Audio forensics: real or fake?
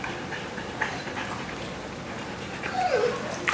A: real